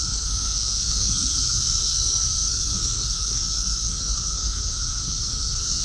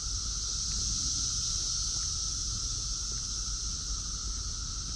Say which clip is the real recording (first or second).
second